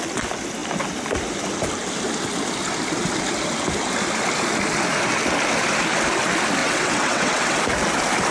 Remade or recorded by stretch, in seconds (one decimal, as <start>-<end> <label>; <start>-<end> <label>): 0.0-6.6 recorded; 6.6-7.6 remade; 7.6-8.3 recorded